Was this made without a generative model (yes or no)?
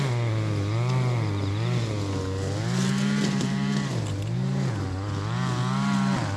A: yes